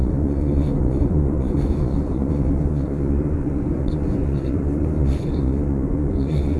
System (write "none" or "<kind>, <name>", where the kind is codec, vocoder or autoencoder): vocoder, Vocos